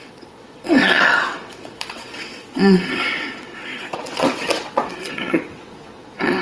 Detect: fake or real fake